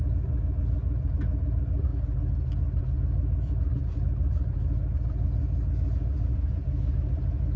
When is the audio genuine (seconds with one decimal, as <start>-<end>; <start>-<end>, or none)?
0.0-7.6